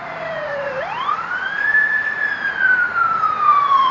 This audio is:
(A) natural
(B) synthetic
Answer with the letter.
B